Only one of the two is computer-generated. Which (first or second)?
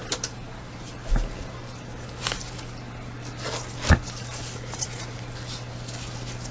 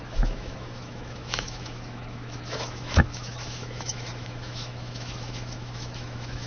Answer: second